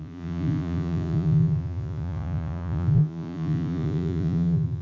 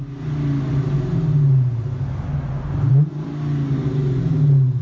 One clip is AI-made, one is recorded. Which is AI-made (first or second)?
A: first